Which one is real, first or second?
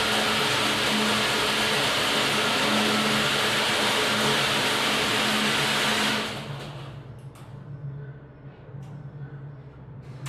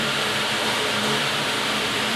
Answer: first